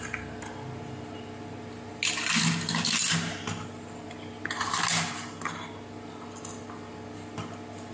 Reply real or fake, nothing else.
real